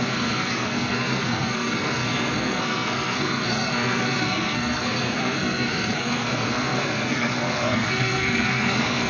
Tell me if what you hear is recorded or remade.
remade